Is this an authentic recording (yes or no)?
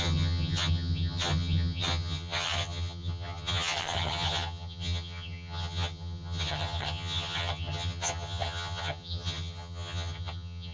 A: no